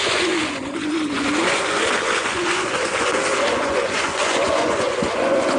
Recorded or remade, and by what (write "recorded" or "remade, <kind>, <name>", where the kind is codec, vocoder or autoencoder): remade, vocoder, Vocos